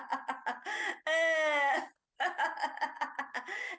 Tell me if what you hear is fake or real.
real